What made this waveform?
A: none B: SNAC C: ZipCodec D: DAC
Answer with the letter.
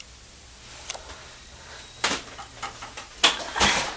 A